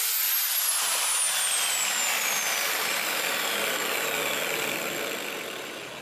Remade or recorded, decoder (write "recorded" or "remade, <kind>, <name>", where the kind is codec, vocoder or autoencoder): recorded